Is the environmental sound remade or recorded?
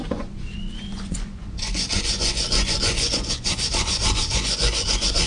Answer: remade